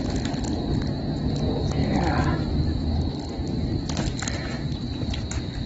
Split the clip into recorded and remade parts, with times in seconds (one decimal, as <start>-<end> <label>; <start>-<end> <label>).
0.0-5.7 recorded